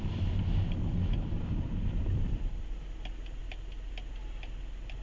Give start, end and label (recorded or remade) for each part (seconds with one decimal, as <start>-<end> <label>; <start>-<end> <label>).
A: 0.0-0.5 recorded; 0.5-2.6 remade; 2.6-5.0 recorded